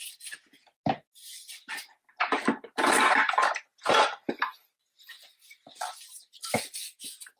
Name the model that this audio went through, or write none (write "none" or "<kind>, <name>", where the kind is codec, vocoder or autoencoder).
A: none